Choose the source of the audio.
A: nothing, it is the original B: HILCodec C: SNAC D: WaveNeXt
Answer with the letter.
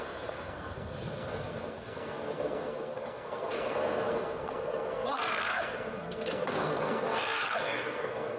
C